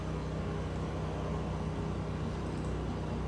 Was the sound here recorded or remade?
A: recorded